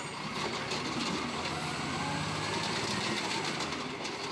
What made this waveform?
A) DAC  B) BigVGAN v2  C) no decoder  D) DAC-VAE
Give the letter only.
C